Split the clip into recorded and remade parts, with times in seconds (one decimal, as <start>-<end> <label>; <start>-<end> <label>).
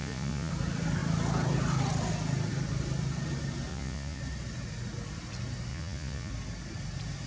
0.0-0.5 remade; 0.5-3.7 recorded; 3.7-4.2 remade; 4.2-5.7 recorded; 5.7-6.3 remade; 6.3-7.3 recorded